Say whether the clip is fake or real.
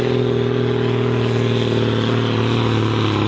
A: real